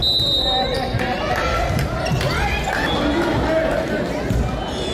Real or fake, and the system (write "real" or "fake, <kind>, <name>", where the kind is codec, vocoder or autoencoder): real